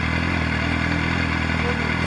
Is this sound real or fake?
real